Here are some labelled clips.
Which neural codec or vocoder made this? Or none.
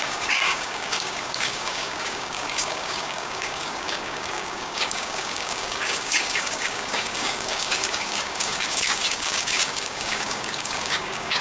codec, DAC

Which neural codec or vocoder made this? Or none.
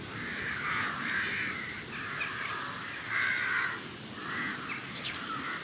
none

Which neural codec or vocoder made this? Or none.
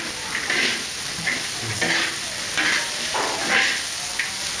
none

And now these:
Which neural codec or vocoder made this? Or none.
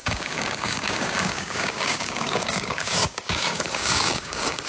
codec, DAC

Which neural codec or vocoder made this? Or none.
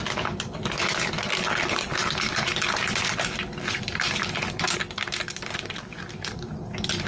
codec, DAC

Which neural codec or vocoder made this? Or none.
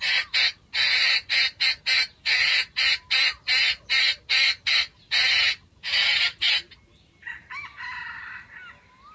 none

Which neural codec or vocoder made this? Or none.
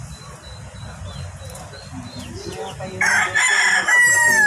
none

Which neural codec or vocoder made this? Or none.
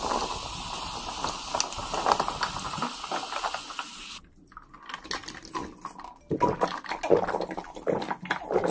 none